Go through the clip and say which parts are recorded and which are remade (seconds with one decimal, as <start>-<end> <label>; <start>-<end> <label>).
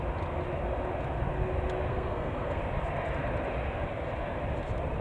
0.0-1.9 recorded; 1.9-2.6 remade; 2.6-5.0 recorded